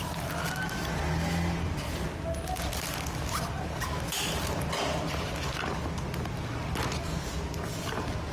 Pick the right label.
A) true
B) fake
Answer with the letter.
A